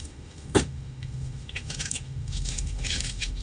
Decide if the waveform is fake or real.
fake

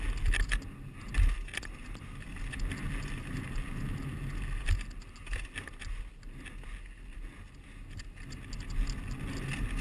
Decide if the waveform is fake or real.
real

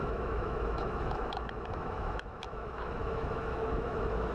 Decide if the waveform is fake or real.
fake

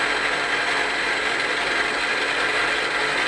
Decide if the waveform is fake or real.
real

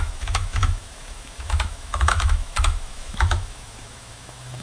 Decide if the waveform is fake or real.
fake